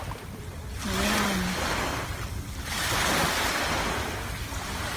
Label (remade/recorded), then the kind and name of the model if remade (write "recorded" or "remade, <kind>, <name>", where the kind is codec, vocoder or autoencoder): recorded